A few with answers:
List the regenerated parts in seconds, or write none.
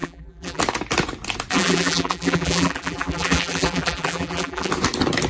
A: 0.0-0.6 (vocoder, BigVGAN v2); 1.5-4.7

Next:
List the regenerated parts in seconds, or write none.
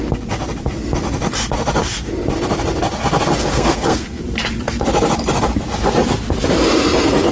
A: 3.5-4.2 (codec, SNAC)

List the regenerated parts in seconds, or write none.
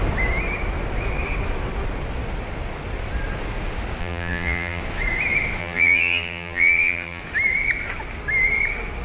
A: 4.0-4.8 (vocoder, BigVGAN v2); 5.6-7.2